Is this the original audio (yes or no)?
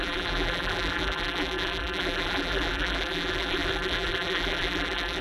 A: no